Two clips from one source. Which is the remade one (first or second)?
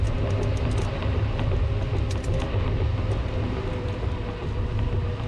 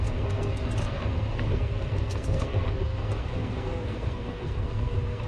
second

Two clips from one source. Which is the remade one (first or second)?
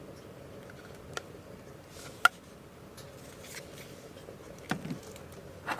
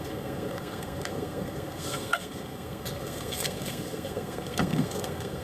second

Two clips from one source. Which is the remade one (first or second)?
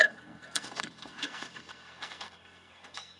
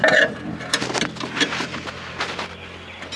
first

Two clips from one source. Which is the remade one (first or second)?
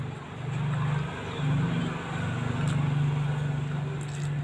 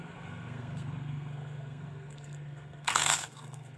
second